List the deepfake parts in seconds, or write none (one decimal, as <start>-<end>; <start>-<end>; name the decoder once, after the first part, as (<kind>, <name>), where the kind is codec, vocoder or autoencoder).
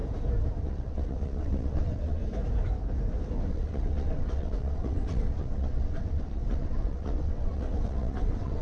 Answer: 0.6-2.2 (vocoder, WaveNeXt); 3.5-8.6